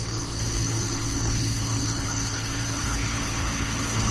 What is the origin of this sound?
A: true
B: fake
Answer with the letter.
B